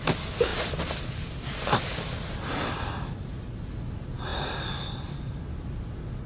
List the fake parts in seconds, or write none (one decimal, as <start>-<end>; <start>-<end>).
none